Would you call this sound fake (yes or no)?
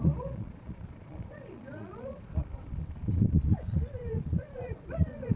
yes